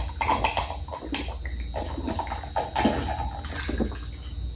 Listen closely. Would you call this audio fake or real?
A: real